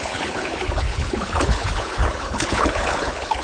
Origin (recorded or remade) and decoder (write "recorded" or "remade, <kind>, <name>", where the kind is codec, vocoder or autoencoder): remade, codec, HILCodec